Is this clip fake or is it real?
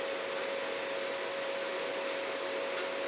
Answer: real